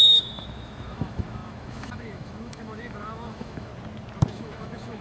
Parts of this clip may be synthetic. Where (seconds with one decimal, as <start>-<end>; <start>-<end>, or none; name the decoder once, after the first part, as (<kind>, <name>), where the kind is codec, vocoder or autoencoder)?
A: 0.0-3.7 (autoencoder, DAC-VAE); 4.3-5.0